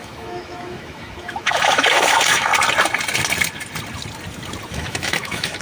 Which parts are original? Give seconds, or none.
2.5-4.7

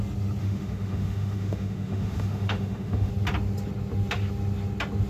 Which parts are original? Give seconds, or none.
0.0-0.4; 3.1-5.1

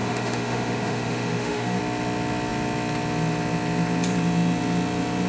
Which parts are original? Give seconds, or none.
1.8-5.3

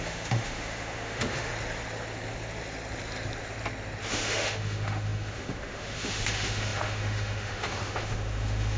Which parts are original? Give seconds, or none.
1.5-4.1